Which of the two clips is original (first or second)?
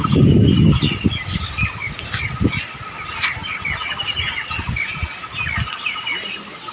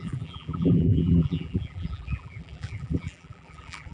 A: first